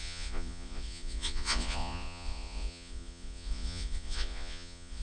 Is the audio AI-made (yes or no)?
yes